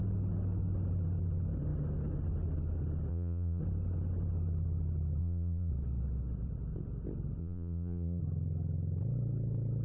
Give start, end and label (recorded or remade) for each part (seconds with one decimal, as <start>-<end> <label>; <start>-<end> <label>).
0.0-3.1 recorded; 3.1-3.6 remade; 3.6-5.2 recorded; 5.2-5.7 remade; 5.7-7.4 recorded; 7.4-8.2 remade; 8.2-9.8 recorded